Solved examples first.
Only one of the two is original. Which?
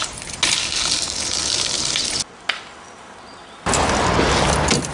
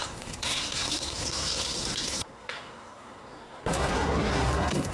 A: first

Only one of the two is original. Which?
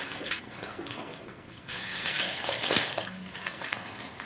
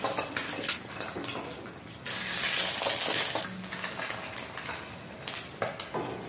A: second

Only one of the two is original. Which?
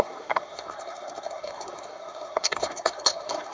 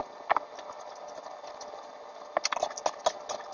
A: second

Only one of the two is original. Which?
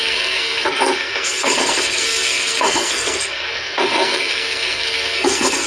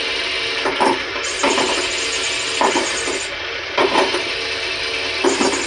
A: second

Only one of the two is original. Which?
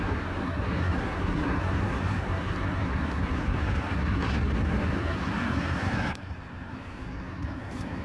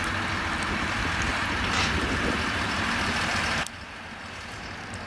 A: second